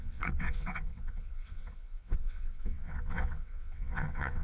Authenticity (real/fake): fake